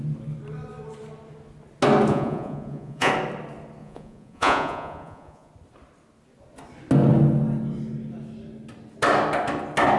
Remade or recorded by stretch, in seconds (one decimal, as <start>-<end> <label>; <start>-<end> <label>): 0.0-2.1 recorded; 2.1-3.1 remade; 3.1-3.8 recorded; 3.8-5.5 remade; 5.5-10.0 recorded